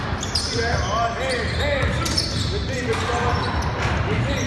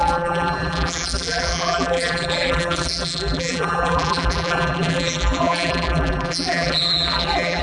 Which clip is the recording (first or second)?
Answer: first